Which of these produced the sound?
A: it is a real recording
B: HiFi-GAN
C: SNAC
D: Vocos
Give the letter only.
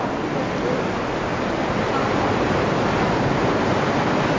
A